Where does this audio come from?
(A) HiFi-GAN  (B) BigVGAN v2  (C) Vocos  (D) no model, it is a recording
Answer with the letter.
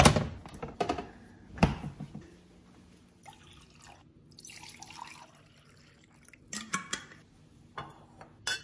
D